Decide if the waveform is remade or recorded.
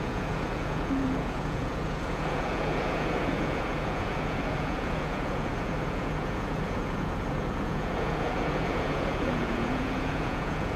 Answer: remade